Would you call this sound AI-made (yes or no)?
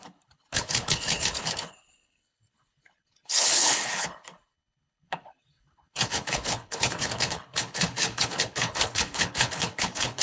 yes